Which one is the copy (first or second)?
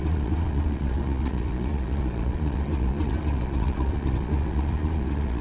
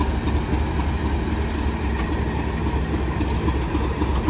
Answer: first